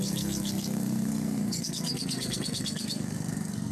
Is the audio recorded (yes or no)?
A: no